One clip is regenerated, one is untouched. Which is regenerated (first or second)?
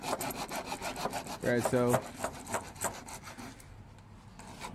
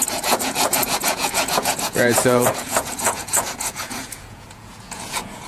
second